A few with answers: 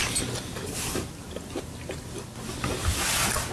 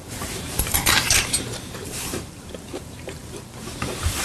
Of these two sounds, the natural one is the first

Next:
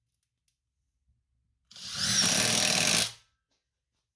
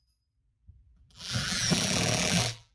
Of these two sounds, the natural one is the first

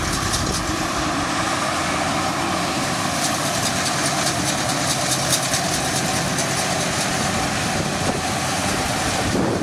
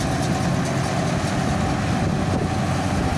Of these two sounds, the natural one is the second